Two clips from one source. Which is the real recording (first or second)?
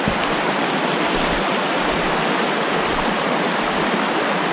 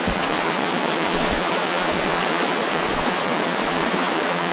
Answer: first